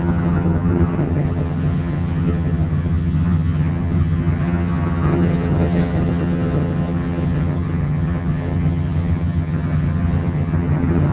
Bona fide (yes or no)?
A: no